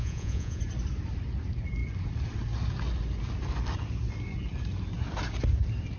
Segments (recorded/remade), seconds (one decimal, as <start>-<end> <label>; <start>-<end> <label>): 0.0-0.6 remade; 0.6-6.0 recorded